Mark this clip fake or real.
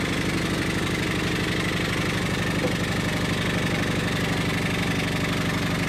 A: real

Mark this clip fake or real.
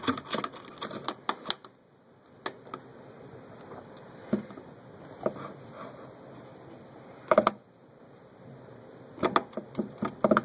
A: real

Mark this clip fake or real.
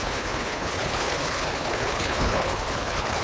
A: fake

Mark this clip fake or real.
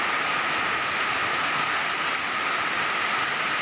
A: real